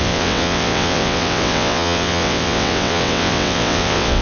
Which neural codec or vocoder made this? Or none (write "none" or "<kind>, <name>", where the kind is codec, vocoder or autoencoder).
vocoder, WaveNeXt